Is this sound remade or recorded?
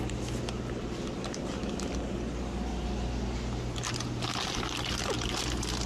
recorded